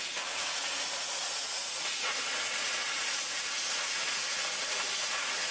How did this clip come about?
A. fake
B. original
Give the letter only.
A